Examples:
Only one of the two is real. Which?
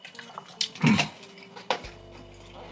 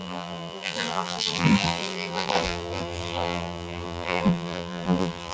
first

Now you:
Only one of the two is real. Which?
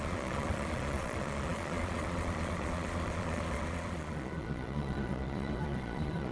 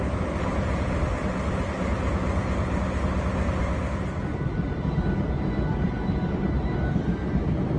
second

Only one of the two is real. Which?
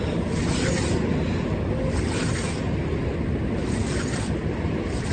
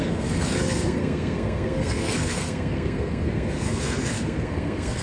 first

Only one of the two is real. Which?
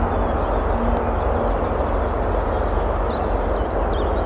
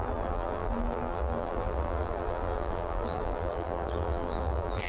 first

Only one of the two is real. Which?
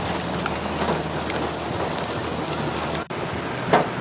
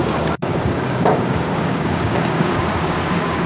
first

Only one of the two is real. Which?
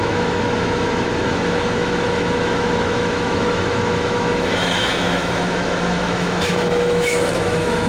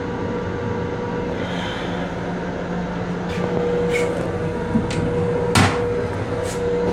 second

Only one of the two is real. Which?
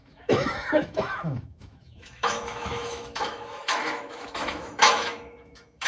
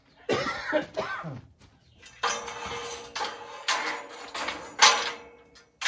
second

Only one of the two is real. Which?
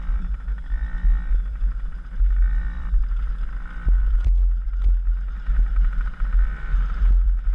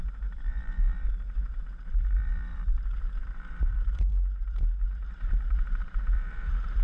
first